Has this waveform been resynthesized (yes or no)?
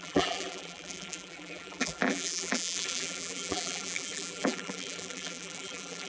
yes